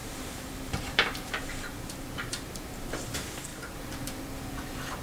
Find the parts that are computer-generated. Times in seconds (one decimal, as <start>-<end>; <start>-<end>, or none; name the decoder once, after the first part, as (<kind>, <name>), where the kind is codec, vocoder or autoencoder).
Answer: 0.0-3.0 (vocoder, BigVGAN v2); 3.5-4.2